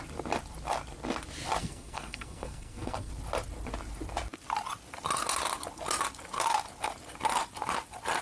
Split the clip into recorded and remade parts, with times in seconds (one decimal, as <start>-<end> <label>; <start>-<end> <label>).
0.0-1.6 recorded; 1.6-3.1 remade; 3.1-8.2 recorded